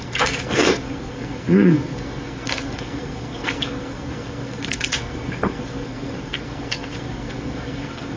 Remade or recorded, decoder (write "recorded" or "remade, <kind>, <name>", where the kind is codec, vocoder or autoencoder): remade, codec, SNAC